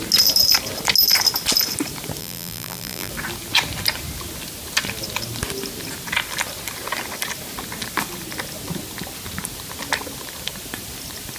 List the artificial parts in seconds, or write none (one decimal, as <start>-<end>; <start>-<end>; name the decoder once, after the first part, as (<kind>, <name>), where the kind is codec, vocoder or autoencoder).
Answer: 2.2-3.1 (vocoder, BigVGAN v2)